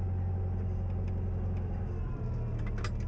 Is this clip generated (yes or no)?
no